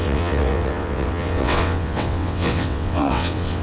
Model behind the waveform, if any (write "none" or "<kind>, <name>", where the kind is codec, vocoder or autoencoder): vocoder, WaveNeXt